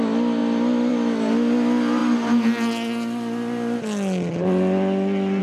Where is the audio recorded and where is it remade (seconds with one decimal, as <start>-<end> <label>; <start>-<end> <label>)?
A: 0.0-5.4 recorded